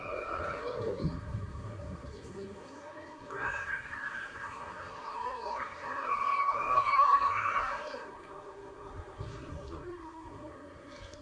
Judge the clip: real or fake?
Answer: fake